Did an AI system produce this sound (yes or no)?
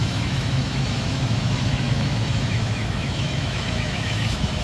yes